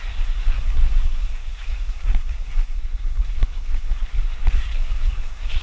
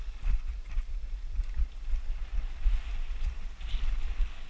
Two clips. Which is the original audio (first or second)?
second